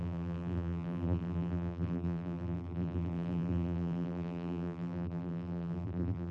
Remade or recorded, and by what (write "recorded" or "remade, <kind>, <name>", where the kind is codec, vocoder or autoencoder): remade, vocoder, BigVGAN v2